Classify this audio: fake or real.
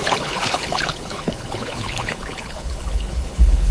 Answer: fake